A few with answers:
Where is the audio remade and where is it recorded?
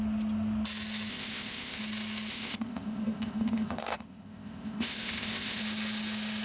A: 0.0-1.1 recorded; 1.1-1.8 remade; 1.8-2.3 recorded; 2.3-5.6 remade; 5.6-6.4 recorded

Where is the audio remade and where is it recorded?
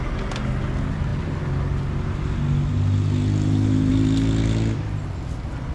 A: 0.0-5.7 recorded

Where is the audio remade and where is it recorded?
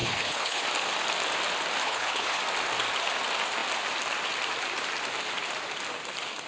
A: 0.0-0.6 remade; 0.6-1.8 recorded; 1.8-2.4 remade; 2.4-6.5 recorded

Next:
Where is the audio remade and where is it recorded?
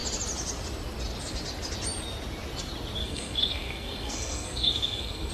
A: 0.0-3.0 recorded; 3.0-5.3 remade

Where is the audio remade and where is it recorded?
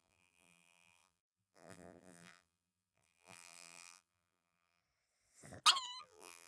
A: 0.0-4.8 remade; 4.8-6.0 recorded; 6.0-6.5 remade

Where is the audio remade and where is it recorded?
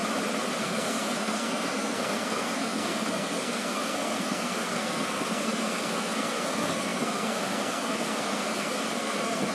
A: 0.0-0.6 recorded; 0.6-9.5 remade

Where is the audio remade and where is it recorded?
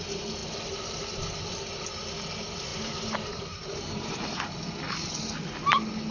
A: 0.0-0.4 recorded; 0.4-1.0 remade; 1.0-2.7 recorded; 2.7-4.2 remade; 4.2-6.1 recorded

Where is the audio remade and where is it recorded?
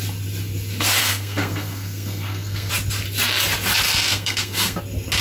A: 0.0-1.0 recorded; 1.0-2.7 remade; 2.7-4.1 recorded; 4.1-4.8 remade; 4.8-5.2 recorded